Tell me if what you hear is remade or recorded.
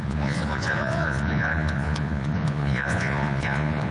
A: remade